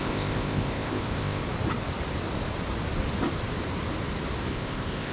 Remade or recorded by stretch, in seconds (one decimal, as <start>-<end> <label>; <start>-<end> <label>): 0.0-1.4 remade; 1.4-4.5 recorded; 4.5-5.1 remade